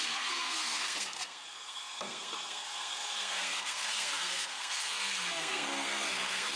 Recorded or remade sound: remade